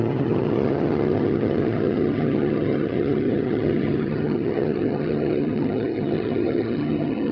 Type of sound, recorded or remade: remade